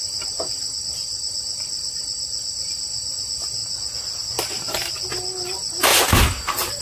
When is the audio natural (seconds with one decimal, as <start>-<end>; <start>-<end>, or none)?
0.0-6.8